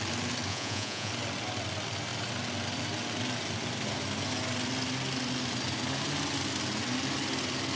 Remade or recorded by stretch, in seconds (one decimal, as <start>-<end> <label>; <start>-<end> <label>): 0.0-0.5 recorded; 0.5-1.1 remade; 1.1-7.8 recorded